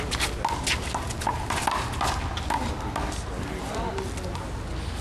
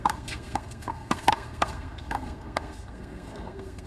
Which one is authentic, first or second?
first